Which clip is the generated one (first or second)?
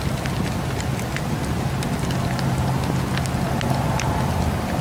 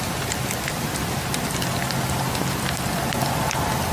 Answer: second